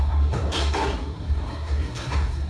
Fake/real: fake